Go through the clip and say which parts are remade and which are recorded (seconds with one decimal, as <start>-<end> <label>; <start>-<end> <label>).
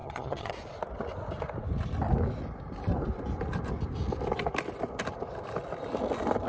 0.0-0.5 remade; 0.5-6.5 recorded